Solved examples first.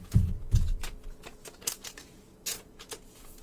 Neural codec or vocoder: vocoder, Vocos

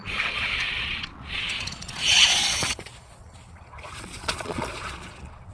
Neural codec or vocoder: vocoder, Vocos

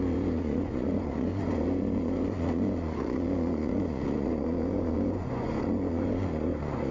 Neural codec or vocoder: vocoder, Vocos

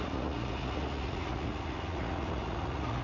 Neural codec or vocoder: vocoder, Vocos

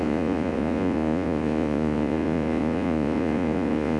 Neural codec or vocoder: vocoder, Vocos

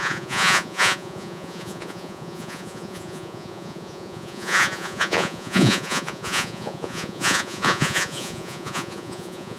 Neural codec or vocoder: vocoder, Vocos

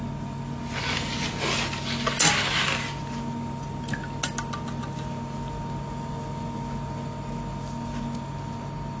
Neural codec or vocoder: none